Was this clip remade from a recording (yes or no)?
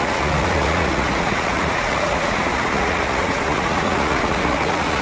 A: yes